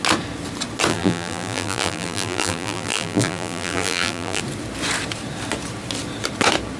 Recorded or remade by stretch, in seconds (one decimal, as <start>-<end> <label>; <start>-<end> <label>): 0.0-0.9 recorded; 0.9-4.4 remade; 4.4-6.8 recorded